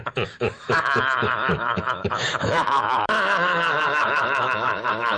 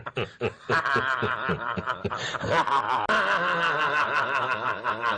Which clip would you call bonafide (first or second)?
second